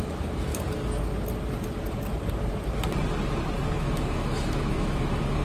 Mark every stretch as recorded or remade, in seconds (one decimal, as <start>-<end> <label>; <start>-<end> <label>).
0.0-0.5 remade; 0.5-3.7 recorded; 3.7-5.4 remade